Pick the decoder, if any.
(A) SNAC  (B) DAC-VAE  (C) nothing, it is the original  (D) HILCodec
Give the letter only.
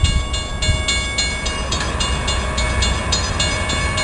C